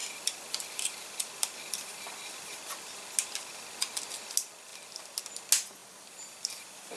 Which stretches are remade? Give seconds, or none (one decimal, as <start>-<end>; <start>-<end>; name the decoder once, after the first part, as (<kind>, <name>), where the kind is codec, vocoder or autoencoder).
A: 0.0-2.6 (vocoder, BigVGAN v2)